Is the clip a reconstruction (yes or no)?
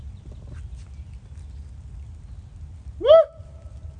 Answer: no